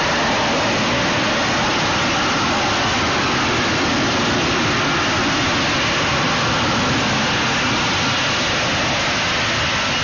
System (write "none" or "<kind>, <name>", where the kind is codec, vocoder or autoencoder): none